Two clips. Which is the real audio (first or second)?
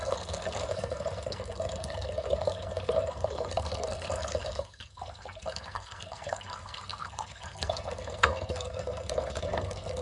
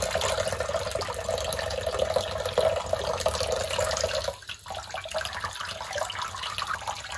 second